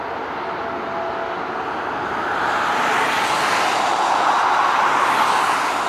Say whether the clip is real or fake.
real